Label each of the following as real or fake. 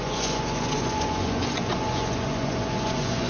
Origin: fake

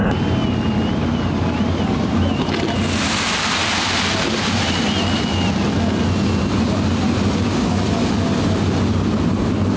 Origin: real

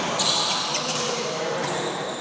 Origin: real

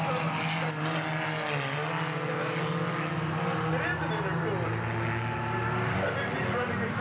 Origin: real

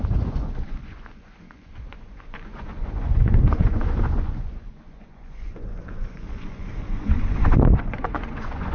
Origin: fake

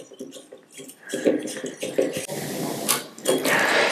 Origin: real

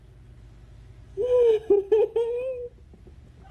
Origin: real